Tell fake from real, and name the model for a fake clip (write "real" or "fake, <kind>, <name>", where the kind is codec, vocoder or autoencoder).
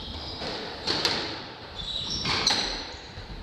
fake, vocoder, BigVGAN v2